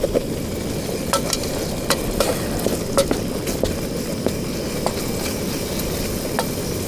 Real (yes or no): yes